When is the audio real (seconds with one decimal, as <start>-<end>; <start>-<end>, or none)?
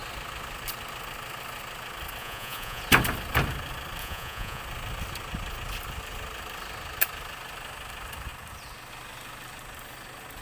0.0-2.2; 2.8-4.0; 4.6-10.4